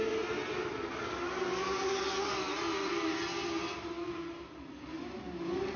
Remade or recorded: recorded